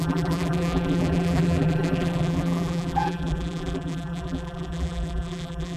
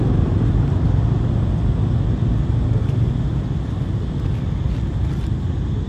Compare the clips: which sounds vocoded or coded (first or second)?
first